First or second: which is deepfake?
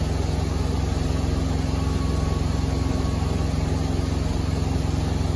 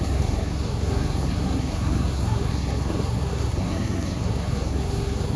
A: second